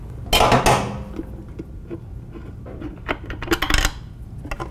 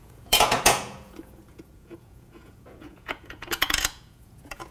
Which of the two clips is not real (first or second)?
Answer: second